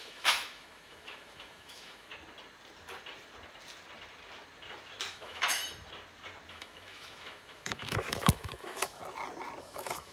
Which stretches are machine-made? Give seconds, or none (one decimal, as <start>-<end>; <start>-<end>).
0.0-2.1; 5.1-5.6; 6.5-9.0; 9.6-10.1